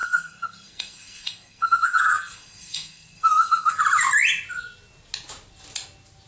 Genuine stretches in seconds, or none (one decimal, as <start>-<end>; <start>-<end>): 3.8-6.3